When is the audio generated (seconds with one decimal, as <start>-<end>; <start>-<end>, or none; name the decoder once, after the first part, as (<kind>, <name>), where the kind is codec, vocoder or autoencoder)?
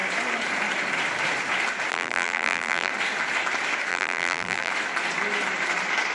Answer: 1.9-2.9 (vocoder, BigVGAN v2); 3.9-4.7